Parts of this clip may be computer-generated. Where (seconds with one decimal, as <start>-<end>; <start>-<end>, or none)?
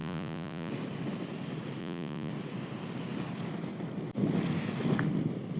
0.0-0.7; 1.8-2.3